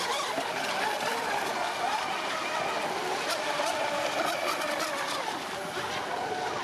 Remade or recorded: recorded